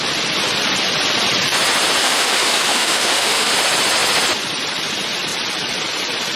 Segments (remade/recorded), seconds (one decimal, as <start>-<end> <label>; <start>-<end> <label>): 0.0-2.0 recorded; 2.0-3.5 remade; 3.5-6.4 recorded